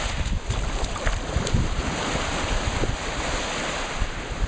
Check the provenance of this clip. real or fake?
real